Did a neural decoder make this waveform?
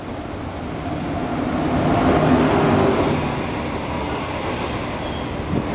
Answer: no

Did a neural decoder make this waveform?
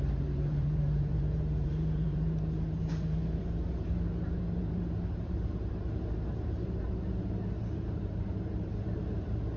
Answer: yes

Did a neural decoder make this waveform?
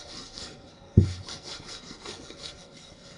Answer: yes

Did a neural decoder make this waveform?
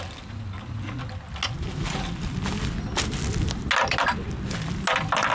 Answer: no